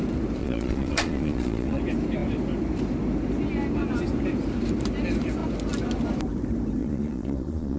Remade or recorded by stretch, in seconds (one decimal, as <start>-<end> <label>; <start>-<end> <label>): 0.0-0.4 recorded; 0.4-1.8 remade; 1.8-6.8 recorded; 6.8-7.8 remade